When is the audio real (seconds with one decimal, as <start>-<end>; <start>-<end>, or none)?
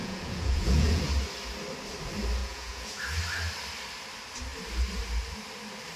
1.0-2.4; 3.0-6.0